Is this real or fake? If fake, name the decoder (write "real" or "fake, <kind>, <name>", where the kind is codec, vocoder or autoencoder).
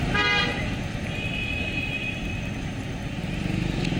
real